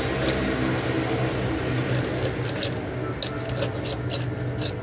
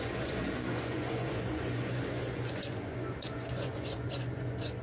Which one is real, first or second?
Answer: first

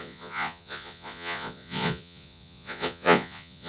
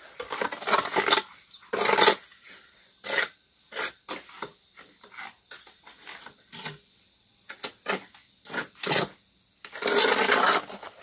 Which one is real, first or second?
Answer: second